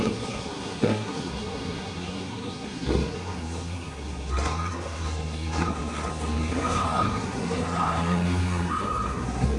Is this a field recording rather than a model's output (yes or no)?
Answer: no